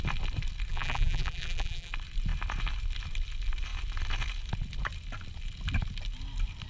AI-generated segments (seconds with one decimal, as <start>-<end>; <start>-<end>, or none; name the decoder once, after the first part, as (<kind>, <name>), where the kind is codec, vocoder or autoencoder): 0.7-1.9 (vocoder, BigVGAN v2)